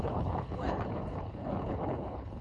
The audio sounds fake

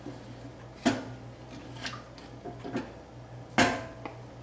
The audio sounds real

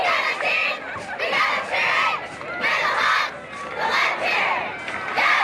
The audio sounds real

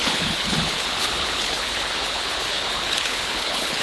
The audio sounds fake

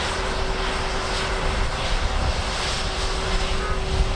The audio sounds real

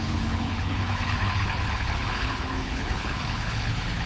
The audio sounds fake